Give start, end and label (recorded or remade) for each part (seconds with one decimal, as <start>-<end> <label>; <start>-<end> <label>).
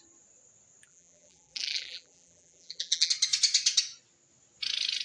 0.0-0.9 recorded; 0.9-3.1 remade; 3.1-5.0 recorded